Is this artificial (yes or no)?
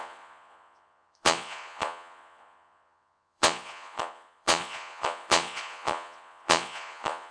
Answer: yes